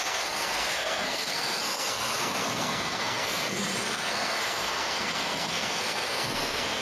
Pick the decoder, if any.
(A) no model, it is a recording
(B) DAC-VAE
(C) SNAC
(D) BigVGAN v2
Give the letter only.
C